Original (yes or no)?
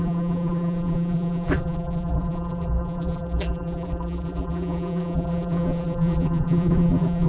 no